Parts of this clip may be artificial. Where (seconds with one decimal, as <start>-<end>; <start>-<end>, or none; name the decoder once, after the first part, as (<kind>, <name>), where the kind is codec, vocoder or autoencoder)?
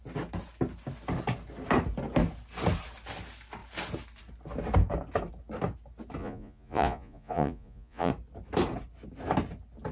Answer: 6.2-8.1 (vocoder, Vocos)